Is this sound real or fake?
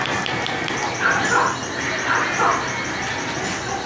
real